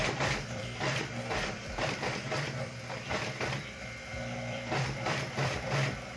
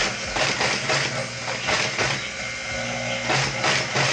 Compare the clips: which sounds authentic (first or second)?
second